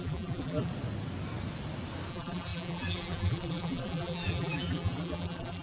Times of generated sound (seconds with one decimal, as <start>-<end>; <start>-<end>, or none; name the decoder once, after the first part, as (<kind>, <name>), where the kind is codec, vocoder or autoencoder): 0.0-0.7 (vocoder, BigVGAN v2); 2.1-5.6